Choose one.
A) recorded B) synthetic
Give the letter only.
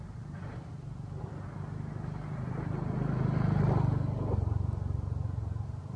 A